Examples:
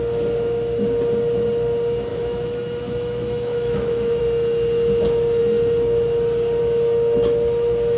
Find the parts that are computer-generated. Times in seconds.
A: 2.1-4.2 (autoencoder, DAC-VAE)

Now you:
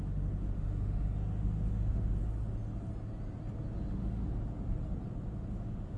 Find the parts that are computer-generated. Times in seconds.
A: 0.0-2.2 (autoencoder, DAC-VAE); 3.9-4.4; 5.5-6.0

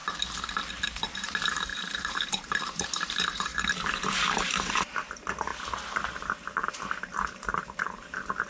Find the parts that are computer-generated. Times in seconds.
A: 0.7-8.5 (vocoder, BigVGAN v2)

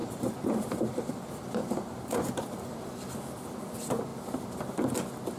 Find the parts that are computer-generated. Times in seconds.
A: 0.0-1.1 (vocoder, BigVGAN v2); 1.6-2.5

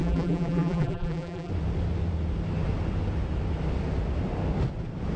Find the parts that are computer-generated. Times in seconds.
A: 0.0-1.5 (vocoder, BigVGAN v2)

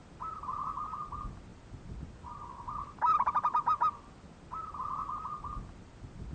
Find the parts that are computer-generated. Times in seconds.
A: none

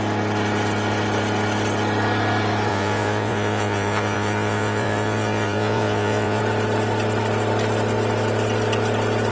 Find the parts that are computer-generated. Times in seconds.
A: 2.7-6.4 (vocoder, Vocos)

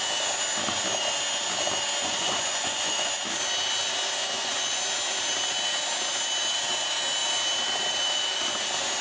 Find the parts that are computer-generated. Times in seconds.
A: 2.0-3.1 (vocoder, Vocos); 4.2-4.8